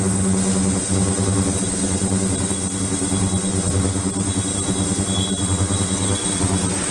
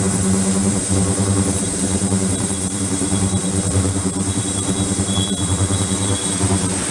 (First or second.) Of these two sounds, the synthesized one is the second